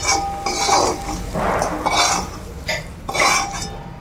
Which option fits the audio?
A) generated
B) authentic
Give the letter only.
B